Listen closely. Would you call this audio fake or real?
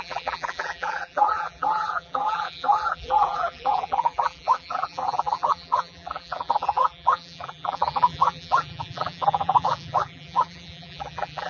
fake